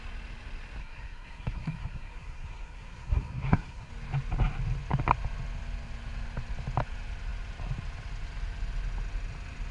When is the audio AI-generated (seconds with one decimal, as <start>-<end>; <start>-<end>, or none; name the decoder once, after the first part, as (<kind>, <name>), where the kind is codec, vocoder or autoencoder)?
0.8-3.9 (codec, SNAC)

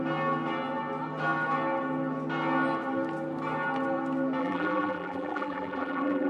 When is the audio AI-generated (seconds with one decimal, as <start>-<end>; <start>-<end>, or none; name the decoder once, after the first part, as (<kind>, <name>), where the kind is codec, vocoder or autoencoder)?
4.4-6.3 (vocoder, BigVGAN v2)

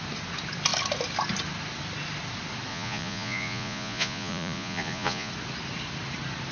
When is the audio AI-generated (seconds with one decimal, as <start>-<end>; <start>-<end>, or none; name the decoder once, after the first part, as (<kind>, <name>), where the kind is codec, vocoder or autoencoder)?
2.7-5.3 (vocoder, Vocos)

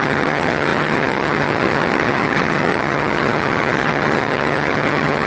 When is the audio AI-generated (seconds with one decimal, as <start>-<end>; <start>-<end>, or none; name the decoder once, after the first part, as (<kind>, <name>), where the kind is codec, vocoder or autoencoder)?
0.0-5.3 (vocoder, HiFi-GAN)